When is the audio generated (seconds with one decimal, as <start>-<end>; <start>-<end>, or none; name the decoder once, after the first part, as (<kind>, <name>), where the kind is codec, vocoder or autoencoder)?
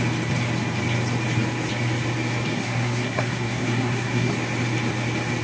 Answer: 2.5-4.3 (codec, SNAC)